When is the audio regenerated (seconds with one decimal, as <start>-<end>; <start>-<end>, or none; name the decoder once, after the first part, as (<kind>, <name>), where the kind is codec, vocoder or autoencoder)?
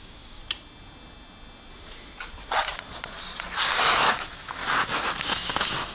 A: 0.0-0.4 (autoencoder, DAC-VAE); 3.9-4.6; 5.3-5.9